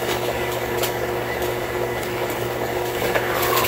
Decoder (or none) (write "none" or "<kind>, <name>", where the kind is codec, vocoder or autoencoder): codec, DAC